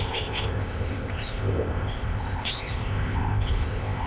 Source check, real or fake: fake